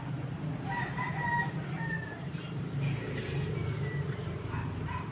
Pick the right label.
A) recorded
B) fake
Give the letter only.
A